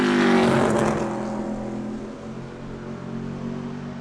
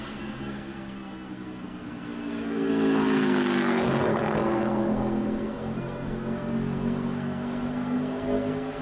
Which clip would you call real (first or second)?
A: first